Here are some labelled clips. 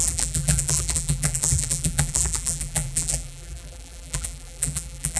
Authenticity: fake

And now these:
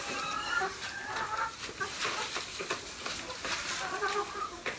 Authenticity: real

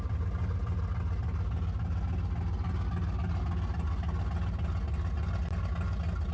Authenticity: real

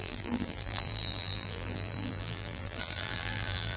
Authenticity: fake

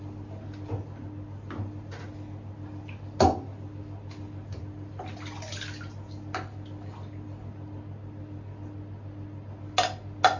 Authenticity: real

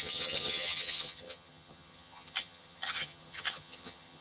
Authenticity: fake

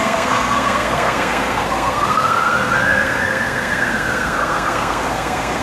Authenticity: fake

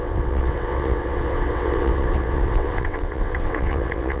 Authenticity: fake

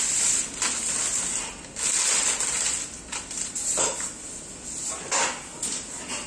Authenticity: real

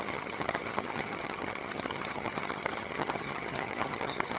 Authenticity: fake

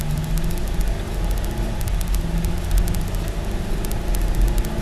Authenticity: real